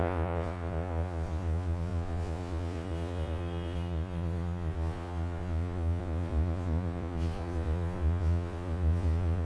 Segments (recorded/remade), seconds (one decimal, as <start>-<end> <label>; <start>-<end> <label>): 0.0-9.4 remade